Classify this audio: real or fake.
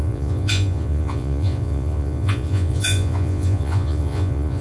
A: fake